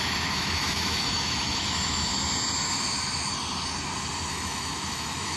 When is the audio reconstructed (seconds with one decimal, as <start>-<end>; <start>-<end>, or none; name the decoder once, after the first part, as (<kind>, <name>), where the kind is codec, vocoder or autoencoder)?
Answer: 0.0-2.1 (autoencoder, DAC-VAE); 4.3-5.4